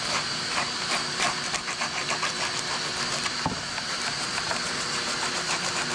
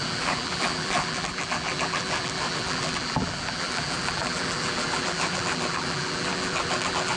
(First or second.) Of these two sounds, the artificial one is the second